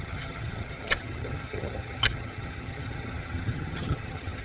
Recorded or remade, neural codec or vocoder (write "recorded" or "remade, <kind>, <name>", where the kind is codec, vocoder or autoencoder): remade, vocoder, HiFi-GAN